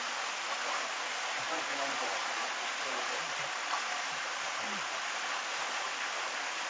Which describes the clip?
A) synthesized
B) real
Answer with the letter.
B